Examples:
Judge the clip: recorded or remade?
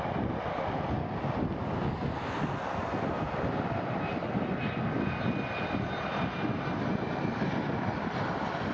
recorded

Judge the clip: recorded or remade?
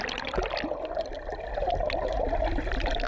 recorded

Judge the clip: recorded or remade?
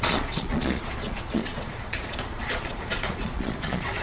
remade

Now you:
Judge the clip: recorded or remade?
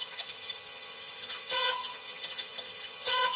remade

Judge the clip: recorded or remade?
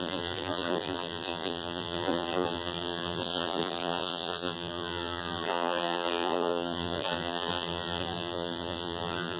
remade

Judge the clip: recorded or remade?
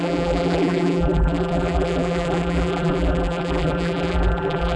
remade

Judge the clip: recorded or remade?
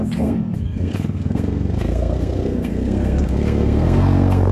remade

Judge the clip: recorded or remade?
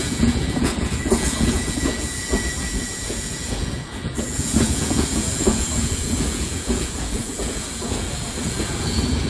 remade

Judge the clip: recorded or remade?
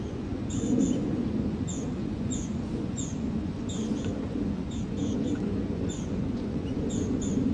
remade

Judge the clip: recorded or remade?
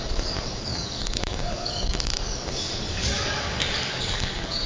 remade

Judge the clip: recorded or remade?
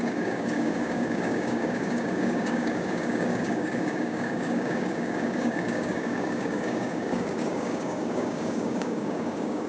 remade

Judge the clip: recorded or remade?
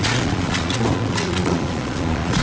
remade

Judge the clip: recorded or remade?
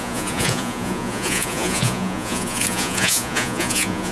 remade